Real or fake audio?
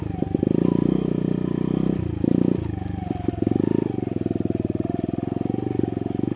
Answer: real